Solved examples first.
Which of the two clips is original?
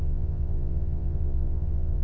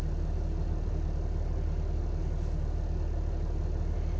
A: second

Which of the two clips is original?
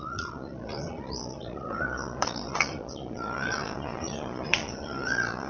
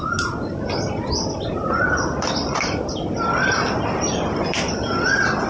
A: second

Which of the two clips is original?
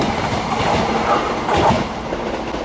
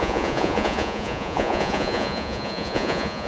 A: first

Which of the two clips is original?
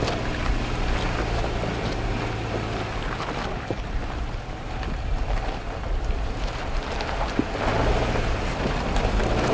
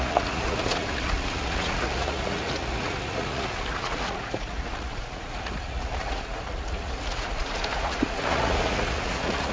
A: first